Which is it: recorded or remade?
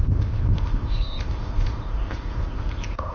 remade